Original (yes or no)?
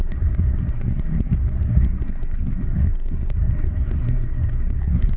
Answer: no